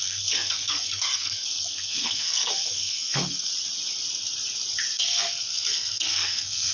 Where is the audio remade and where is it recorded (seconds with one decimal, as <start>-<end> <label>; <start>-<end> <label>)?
0.0-3.5 remade; 3.5-5.0 recorded; 5.0-6.7 remade